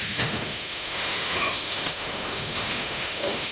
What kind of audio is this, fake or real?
fake